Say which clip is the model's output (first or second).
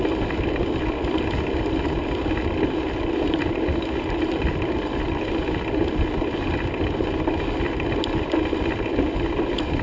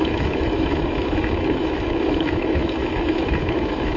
second